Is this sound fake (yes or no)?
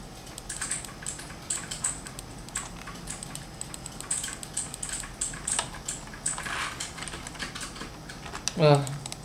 no